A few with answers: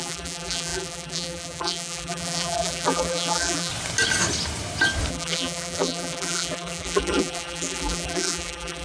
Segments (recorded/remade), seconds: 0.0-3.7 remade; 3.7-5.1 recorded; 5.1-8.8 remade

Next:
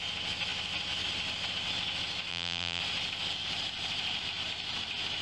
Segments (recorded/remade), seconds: 0.0-2.3 recorded; 2.3-2.8 remade; 2.8-5.2 recorded

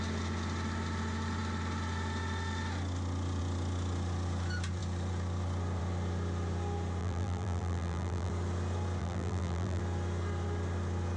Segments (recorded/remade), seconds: 0.0-7.0 recorded; 7.0-8.3 remade; 8.3-9.0 recorded; 9.0-9.8 remade; 9.8-11.2 recorded

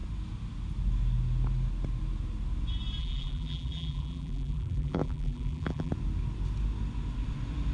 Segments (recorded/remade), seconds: 0.0-3.0 recorded; 3.0-5.9 remade; 5.9-7.7 recorded

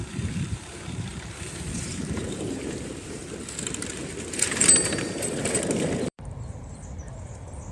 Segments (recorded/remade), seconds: 0.0-3.2 remade; 3.2-3.9 recorded; 3.9-7.7 remade